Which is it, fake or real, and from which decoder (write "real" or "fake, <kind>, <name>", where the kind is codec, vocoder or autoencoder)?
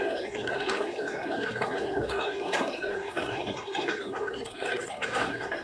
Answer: fake, codec, SNAC